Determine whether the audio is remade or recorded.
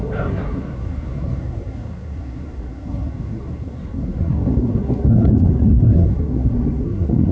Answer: remade